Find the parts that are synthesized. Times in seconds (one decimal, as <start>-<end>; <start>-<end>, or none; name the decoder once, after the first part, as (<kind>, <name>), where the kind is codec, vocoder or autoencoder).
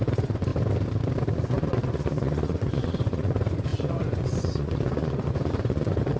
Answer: 0.0-0.5 (vocoder, Vocos); 1.3-6.2